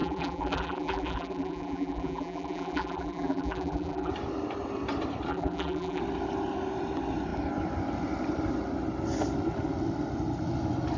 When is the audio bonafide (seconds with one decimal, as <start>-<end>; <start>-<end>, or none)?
4.1-5.3; 6.0-11.0